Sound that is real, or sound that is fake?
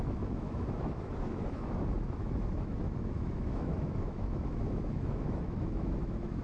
fake